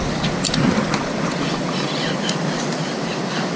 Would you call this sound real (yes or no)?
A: yes